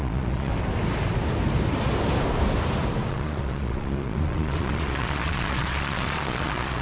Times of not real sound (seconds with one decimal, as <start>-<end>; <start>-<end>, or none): 0.0-0.5; 3.1-6.8

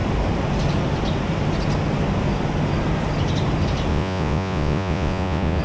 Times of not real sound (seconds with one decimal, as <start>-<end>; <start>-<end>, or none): 3.9-5.6

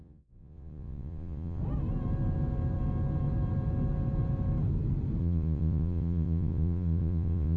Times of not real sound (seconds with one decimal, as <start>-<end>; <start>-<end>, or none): 0.0-1.6; 5.2-7.6

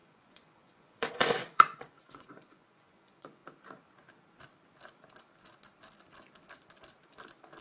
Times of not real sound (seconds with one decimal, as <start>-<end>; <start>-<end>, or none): 0.0-3.4

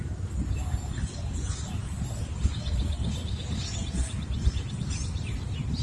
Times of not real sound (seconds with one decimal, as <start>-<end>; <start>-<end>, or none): none

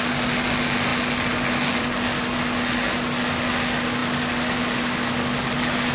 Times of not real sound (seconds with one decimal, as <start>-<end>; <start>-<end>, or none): none

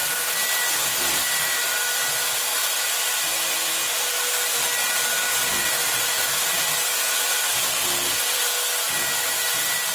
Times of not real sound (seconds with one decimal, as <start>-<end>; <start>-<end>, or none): none